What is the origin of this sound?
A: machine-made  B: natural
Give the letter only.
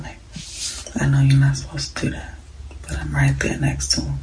B